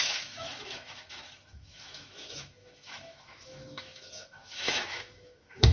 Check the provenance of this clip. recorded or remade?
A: remade